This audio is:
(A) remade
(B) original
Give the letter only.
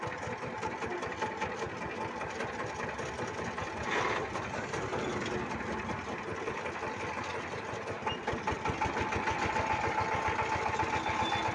B